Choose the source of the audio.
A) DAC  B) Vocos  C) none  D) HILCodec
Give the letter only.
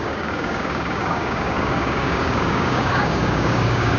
A